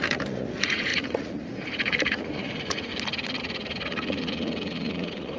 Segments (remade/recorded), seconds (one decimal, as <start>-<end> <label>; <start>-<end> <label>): 0.0-2.9 remade; 2.9-3.4 recorded; 3.4-5.4 remade